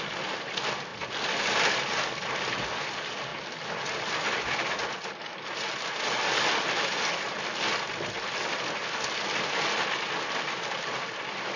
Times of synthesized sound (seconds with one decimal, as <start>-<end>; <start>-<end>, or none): none